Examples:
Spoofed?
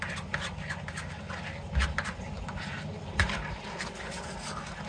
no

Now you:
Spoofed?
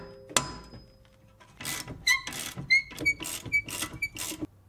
no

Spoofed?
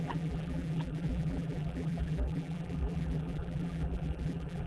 yes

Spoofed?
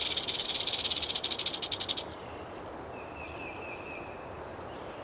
no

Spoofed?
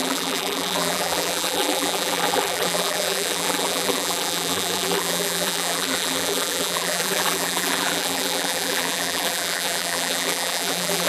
yes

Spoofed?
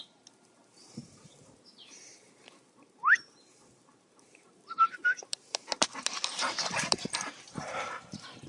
yes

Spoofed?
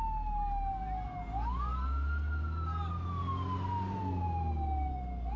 no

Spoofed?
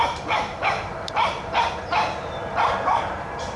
yes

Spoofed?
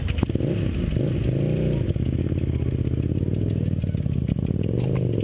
no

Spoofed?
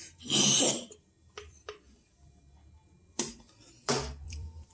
yes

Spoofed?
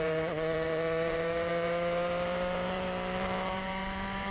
yes